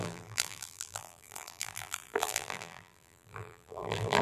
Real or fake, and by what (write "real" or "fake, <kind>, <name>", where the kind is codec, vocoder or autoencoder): fake, vocoder, BigVGAN v2